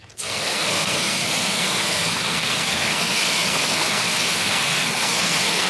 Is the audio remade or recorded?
remade